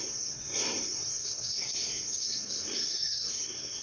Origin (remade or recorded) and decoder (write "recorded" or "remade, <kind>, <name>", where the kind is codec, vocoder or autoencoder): remade, codec, SNAC